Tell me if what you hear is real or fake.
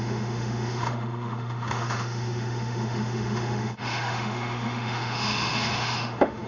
fake